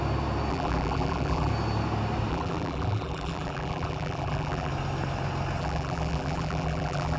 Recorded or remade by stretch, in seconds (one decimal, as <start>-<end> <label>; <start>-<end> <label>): 0.0-0.5 recorded; 0.5-1.5 remade; 1.5-2.3 recorded; 2.3-4.7 remade; 4.7-5.6 recorded; 5.6-7.2 remade